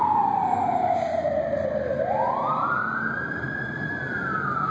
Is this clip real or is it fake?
fake